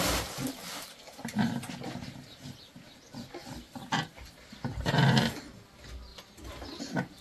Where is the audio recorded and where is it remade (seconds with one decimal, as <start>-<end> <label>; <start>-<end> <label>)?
0.0-1.0 recorded; 1.0-5.3 remade; 5.3-7.2 recorded